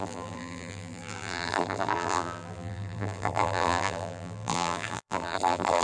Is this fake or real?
fake